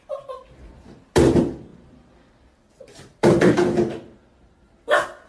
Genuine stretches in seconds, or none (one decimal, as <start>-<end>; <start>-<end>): 0.0-1.7